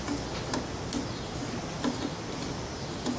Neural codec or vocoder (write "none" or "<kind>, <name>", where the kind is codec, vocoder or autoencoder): none